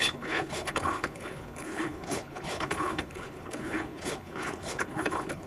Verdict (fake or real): fake